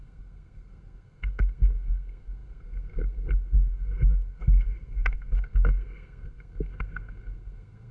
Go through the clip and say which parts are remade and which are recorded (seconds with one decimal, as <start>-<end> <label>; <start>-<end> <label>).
0.0-7.9 remade

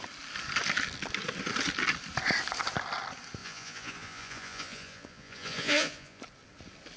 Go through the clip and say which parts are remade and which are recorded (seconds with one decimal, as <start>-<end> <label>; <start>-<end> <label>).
0.0-3.4 recorded; 3.4-6.2 remade; 6.2-7.0 recorded

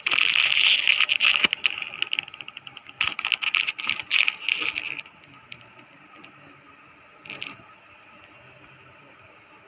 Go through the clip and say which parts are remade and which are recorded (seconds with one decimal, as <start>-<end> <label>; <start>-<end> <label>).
0.0-9.7 recorded

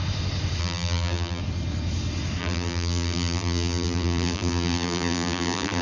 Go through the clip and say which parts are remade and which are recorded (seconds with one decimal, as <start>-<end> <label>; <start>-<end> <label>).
0.0-0.6 recorded; 0.6-1.4 remade; 1.4-2.4 recorded; 2.4-5.8 remade

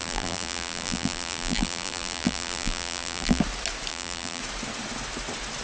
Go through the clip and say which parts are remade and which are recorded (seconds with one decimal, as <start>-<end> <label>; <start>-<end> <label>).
0.0-3.4 remade; 3.4-3.9 recorded; 3.9-4.4 remade; 4.4-5.6 recorded

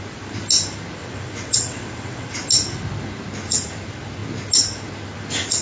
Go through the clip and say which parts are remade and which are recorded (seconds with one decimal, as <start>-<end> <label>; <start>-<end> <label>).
0.0-1.0 recorded; 1.0-2.3 remade; 2.3-5.6 recorded

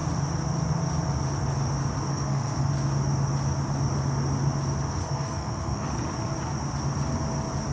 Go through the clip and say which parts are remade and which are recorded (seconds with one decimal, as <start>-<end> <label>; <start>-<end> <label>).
0.0-2.1 recorded; 2.1-2.7 remade; 2.7-5.0 recorded; 5.0-5.9 remade; 5.9-7.7 recorded